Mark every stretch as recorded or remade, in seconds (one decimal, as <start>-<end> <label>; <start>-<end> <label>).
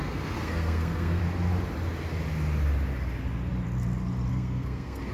0.0-1.2 remade; 1.2-4.3 recorded; 4.3-5.1 remade